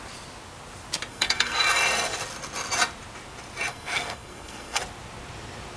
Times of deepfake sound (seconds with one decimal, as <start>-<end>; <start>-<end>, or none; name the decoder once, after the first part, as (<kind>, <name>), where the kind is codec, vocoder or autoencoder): 1.1-1.6 (codec, SNAC); 3.7-4.8